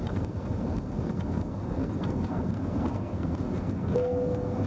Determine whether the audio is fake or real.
fake